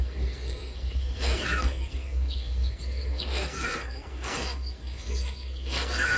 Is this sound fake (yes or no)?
yes